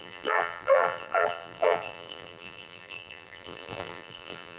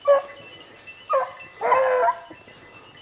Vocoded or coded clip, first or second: first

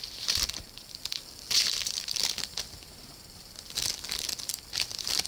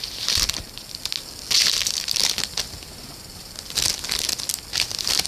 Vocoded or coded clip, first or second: first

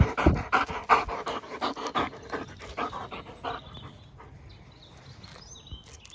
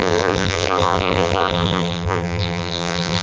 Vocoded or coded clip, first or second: second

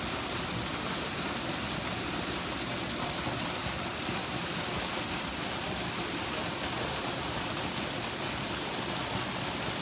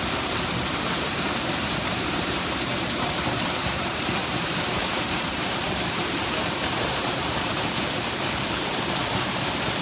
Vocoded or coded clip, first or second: second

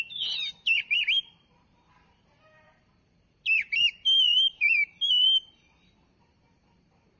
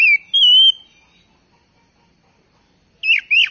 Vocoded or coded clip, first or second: first